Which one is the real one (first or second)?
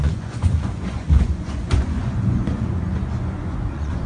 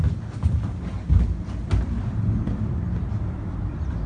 second